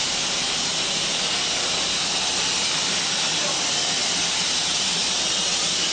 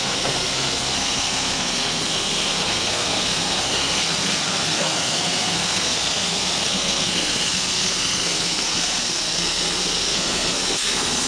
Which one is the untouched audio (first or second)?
first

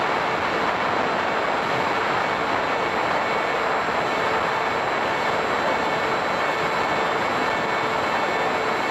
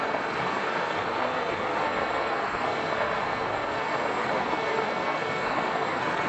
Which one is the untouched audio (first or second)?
first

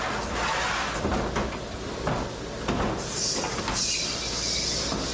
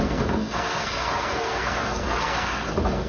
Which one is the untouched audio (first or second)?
first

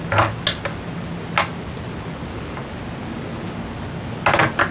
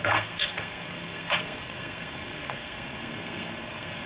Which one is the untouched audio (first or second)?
first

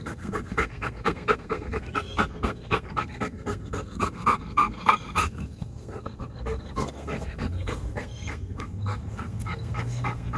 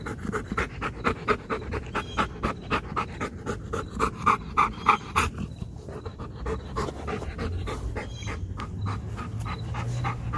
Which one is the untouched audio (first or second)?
second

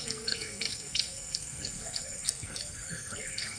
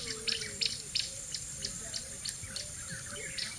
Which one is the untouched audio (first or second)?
second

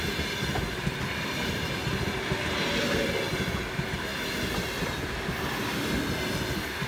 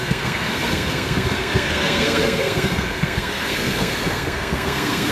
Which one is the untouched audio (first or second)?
first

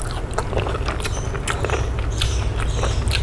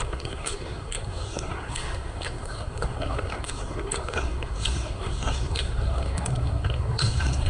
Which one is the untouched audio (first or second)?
first